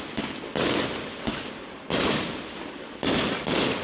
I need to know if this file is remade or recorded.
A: remade